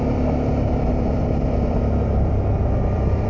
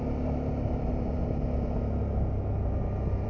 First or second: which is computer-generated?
first